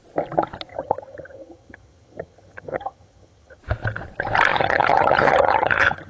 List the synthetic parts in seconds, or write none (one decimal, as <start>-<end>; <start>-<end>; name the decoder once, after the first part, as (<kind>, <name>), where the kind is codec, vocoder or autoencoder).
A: 0.7-3.6 (vocoder, HiFi-GAN); 4.5-6.1